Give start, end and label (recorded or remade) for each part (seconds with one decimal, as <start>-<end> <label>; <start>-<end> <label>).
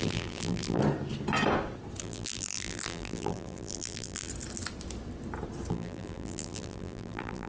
0.0-0.8 remade; 0.8-2.0 recorded; 2.0-4.3 remade; 4.3-5.7 recorded; 5.7-7.5 remade